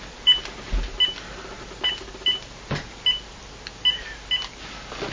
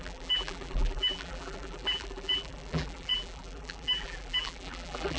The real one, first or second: first